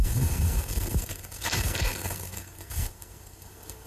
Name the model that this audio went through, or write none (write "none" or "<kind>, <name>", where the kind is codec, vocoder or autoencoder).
codec, SNAC